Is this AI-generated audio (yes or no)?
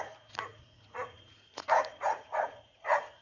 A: yes